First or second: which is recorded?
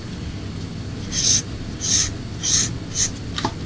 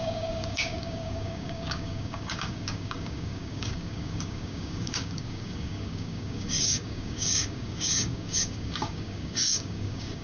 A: first